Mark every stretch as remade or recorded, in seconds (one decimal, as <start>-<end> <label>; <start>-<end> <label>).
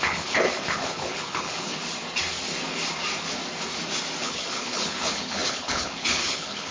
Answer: 0.0-1.8 remade; 1.8-4.2 recorded; 4.2-6.7 remade